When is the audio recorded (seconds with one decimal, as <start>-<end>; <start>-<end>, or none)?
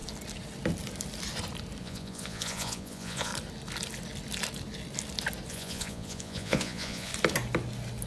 0.0-1.8; 3.3-5.5; 7.1-8.1